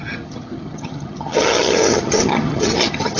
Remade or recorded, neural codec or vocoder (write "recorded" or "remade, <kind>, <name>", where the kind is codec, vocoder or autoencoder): remade, vocoder, HiFi-GAN